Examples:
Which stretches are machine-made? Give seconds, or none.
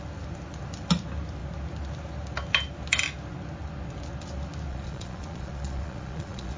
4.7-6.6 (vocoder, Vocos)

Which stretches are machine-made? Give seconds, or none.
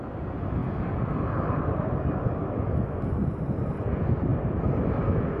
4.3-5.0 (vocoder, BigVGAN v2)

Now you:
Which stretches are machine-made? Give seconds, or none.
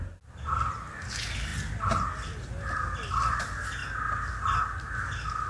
none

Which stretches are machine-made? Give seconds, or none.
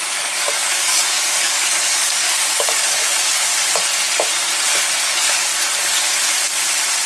0.0-3.5 (codec, DAC); 5.0-5.5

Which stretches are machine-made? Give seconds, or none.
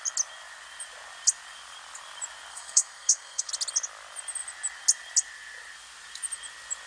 2.5-3.5 (codec, SNAC)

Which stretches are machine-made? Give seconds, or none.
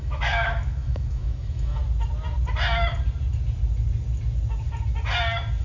0.0-1.8 (autoencoder, DAC-VAE)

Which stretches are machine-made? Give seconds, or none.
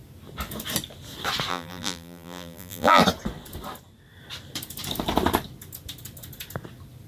1.5-3.0 (vocoder, BigVGAN v2)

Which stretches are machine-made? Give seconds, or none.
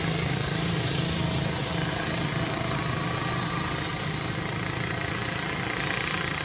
none